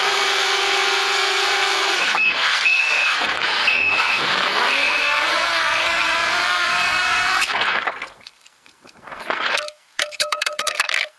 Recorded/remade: remade